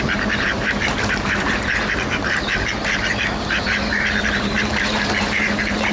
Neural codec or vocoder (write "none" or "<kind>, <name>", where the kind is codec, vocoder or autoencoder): vocoder, BigVGAN v2